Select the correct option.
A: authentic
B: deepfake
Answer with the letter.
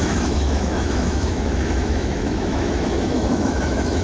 B